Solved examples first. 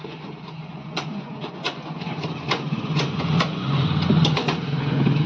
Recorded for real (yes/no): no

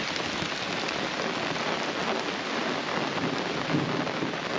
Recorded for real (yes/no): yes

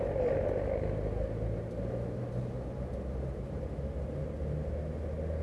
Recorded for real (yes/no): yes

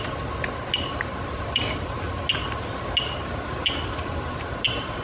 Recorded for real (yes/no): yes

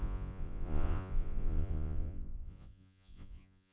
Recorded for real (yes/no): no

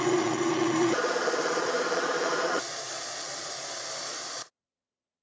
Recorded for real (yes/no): no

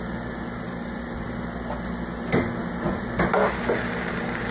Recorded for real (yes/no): yes